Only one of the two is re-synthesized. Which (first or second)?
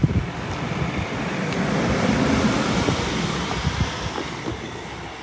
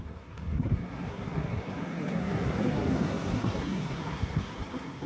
second